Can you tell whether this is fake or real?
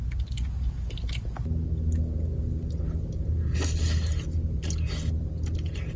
real